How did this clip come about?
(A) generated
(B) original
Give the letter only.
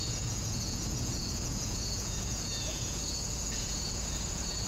A